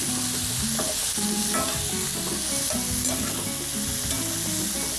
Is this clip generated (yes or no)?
no